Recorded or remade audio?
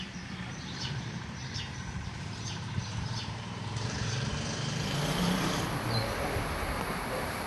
remade